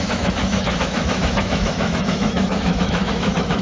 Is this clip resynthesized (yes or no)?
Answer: yes